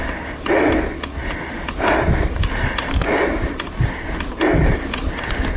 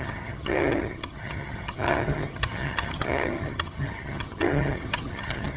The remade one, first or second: second